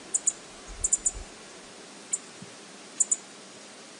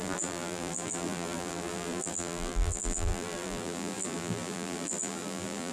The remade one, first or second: second